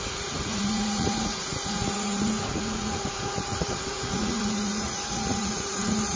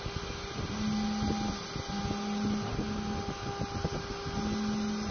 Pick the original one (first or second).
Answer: second